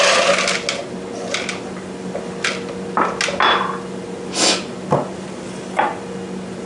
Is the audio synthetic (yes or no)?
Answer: no